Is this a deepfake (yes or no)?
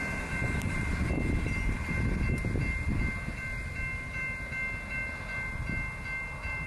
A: no